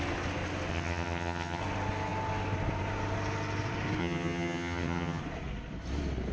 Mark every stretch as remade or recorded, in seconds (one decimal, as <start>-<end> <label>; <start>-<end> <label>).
0.0-0.7 recorded; 0.7-1.6 remade; 1.6-4.0 recorded; 4.0-5.2 remade; 5.2-6.3 recorded